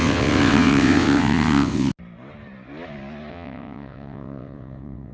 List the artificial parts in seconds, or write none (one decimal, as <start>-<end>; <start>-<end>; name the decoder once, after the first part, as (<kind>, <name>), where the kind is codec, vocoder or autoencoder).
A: 0.0-1.9 (vocoder, WaveNeXt); 3.3-5.1